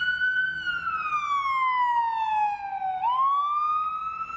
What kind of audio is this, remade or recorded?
recorded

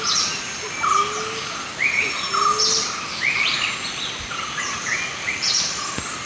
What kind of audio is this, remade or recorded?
recorded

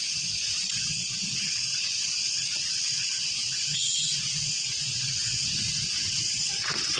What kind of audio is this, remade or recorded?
remade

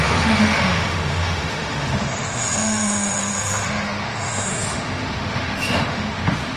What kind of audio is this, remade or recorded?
remade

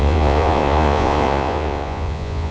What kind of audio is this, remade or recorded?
remade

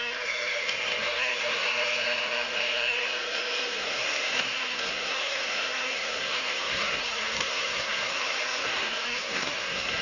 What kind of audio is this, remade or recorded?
remade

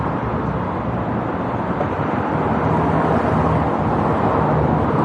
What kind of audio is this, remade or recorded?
recorded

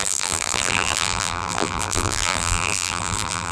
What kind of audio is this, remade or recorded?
remade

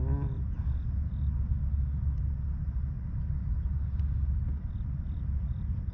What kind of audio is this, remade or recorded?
recorded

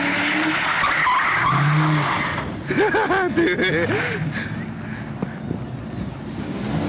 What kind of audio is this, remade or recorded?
recorded